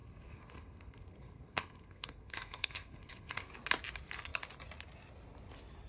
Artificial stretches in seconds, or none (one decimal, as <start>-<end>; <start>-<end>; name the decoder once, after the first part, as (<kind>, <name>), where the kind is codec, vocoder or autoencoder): 0.0-3.5 (codec, SNAC)